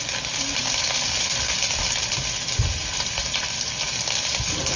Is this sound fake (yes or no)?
no